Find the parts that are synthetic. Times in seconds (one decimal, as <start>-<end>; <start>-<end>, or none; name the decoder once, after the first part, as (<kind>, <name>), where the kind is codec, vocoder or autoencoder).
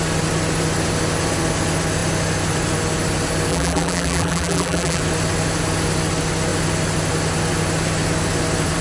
3.5-5.0 (vocoder, BigVGAN v2)